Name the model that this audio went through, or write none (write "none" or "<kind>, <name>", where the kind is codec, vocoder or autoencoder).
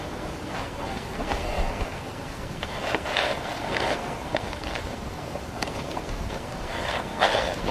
codec, SNAC